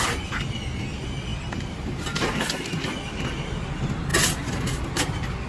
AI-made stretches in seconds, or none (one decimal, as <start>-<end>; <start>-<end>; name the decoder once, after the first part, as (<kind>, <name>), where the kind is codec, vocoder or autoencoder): none